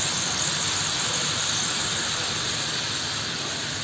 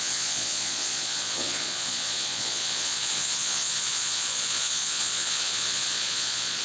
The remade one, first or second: second